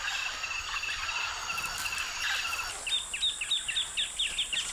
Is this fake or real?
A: real